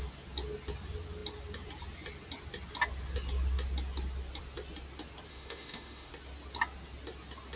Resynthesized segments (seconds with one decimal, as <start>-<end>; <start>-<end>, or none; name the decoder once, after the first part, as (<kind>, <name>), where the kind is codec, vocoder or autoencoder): 5.3-6.1 (autoencoder, DAC-VAE)